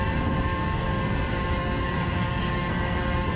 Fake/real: fake